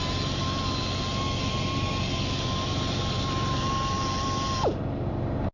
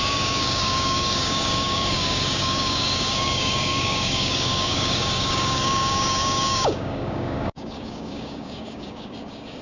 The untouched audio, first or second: first